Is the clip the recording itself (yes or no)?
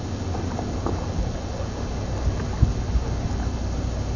yes